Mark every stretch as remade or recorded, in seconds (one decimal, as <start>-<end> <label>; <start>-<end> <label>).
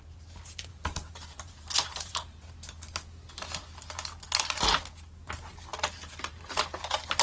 0.0-0.7 recorded; 0.7-2.1 remade; 2.1-7.2 recorded